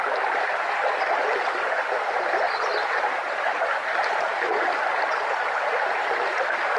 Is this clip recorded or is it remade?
recorded